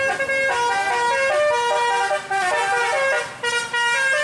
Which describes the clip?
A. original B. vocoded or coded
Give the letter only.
A